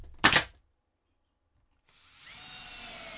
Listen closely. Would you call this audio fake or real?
real